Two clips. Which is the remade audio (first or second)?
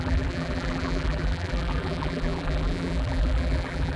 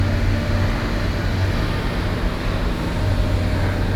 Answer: first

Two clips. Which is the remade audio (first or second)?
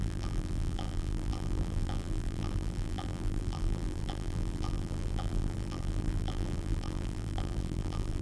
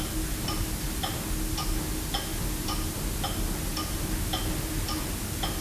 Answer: first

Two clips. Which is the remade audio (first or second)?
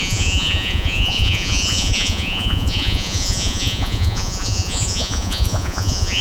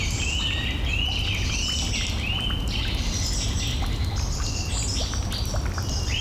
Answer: first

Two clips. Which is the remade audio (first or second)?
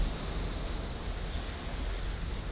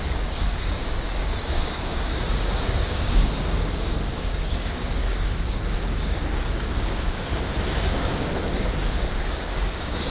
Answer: second